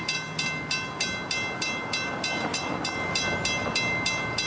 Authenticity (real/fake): real